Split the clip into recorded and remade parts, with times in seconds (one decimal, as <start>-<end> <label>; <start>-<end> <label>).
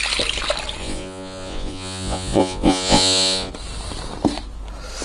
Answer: 0.0-0.8 recorded; 0.8-3.5 remade; 3.5-5.0 recorded